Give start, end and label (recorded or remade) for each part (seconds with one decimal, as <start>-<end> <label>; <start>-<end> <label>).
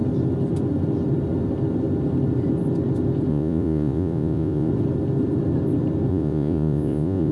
0.0-3.3 recorded; 3.3-4.7 remade; 4.7-6.1 recorded; 6.1-7.3 remade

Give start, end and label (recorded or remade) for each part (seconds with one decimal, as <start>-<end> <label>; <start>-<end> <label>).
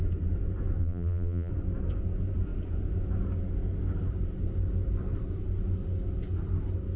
0.0-0.8 recorded; 0.8-1.5 remade; 1.5-7.0 recorded